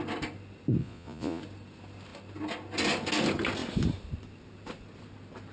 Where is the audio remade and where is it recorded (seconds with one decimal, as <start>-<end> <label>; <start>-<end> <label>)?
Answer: 0.0-0.8 recorded; 0.8-1.4 remade; 1.4-5.5 recorded